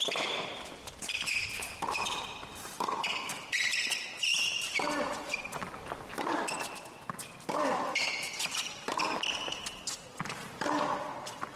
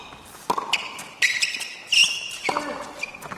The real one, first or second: second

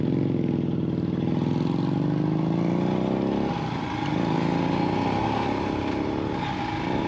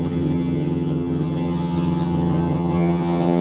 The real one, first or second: first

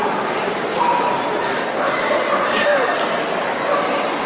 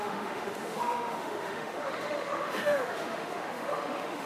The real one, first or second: first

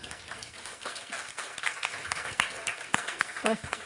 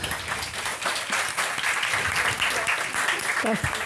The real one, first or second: second